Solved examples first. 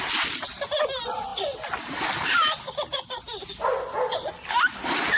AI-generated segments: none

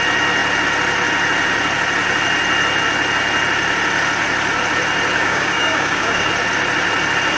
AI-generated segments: 5.2-6.3 (codec, DAC)

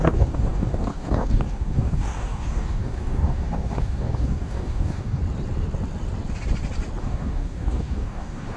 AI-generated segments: 0.0-5.2 (codec, DAC); 7.0-8.6

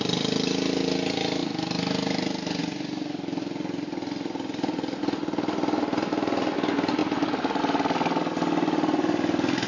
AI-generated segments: none

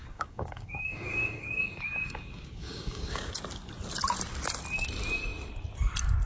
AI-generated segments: 0.0-3.3 (codec, DAC)

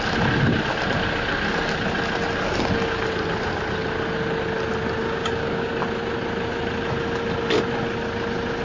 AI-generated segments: 5.0-5.7 (codec, DAC)